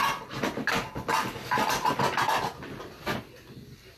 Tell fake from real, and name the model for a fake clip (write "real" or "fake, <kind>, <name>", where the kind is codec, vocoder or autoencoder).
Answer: real